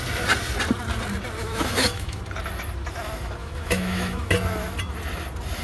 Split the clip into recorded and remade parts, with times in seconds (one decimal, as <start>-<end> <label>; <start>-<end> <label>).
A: 0.0-1.4 recorded; 1.4-2.2 remade; 2.2-3.4 recorded; 3.4-4.3 remade; 4.3-5.6 recorded